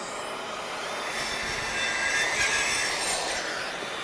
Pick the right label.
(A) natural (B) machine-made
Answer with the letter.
A